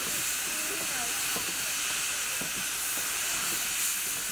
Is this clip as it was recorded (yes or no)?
yes